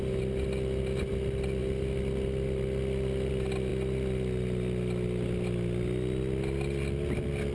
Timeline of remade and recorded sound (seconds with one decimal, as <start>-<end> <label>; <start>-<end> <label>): 0.0-7.5 recorded